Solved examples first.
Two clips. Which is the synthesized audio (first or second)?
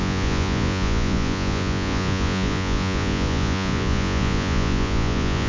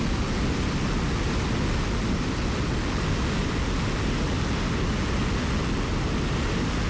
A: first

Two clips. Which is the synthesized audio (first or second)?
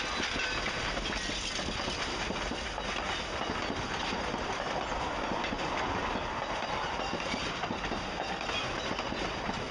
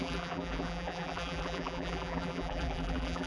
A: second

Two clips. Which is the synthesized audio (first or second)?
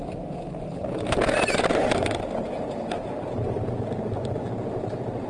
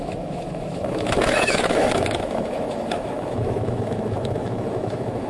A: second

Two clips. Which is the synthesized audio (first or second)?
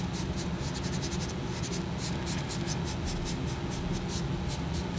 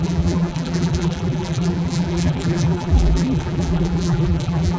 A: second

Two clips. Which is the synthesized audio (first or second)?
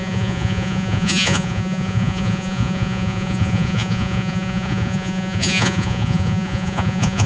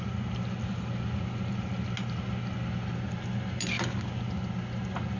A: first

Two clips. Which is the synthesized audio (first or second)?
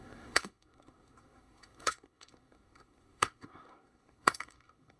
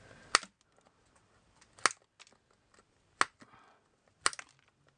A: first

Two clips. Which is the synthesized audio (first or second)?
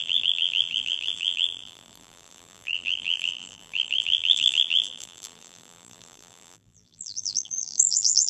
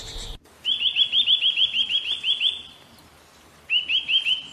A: first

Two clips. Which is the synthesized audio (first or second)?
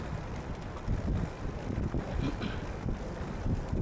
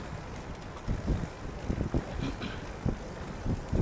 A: first